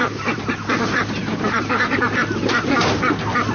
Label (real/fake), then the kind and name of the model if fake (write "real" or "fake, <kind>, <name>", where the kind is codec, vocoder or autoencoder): fake, vocoder, BigVGAN v2